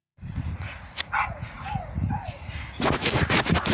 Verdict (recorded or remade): remade